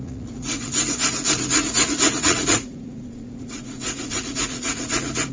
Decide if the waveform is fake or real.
fake